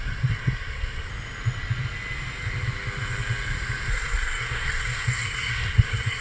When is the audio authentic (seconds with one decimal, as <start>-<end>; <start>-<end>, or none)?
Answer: 1.1-3.9